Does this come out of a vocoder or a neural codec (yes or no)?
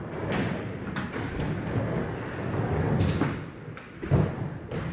no